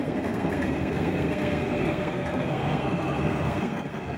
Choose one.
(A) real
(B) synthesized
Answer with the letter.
B